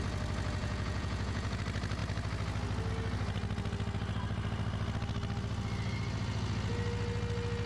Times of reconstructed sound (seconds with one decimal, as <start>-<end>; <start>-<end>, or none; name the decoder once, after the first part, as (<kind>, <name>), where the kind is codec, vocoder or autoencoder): 0.6-1.6 (vocoder, Vocos)